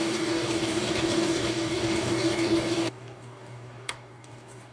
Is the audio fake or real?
fake